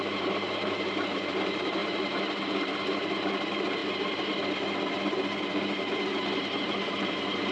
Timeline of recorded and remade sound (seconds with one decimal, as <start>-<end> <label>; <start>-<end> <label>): 0.0-1.8 remade; 1.8-2.9 recorded; 2.9-3.8 remade; 3.8-7.0 recorded; 7.0-7.5 remade